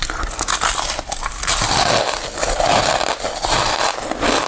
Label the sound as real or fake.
real